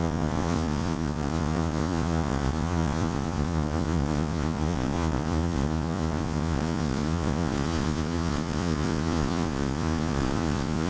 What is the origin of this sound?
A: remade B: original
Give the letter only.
A